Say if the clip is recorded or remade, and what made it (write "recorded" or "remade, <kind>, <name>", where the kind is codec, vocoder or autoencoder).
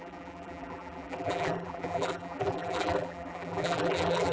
remade, vocoder, BigVGAN v2